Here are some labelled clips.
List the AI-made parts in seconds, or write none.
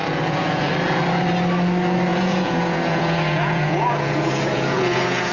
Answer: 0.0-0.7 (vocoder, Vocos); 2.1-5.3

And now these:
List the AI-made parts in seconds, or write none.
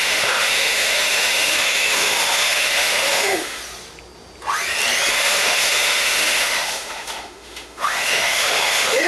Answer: 0.0-3.6 (autoencoder, DAC-VAE); 5.1-9.1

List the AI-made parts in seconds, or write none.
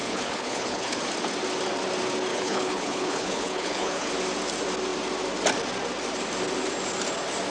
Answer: 0.0-1.0 (codec, HILCodec); 2.3-4.1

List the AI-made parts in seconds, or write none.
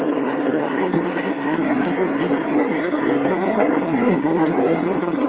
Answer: 0.0-5.3 (codec, SNAC)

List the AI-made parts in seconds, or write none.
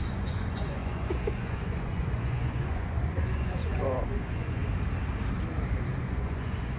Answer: 0.0-4.6 (vocoder, Vocos); 6.0-6.8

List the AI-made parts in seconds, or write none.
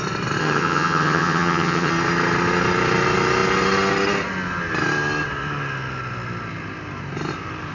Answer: 0.4-1.9 (vocoder, HiFi-GAN)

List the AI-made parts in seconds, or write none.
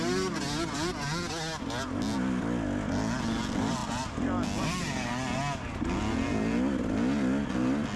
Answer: 3.8-5.1 (vocoder, BigVGAN v2)